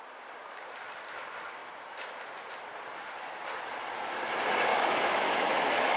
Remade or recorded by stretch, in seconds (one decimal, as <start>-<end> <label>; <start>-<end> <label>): 0.0-4.7 recorded; 4.7-6.0 remade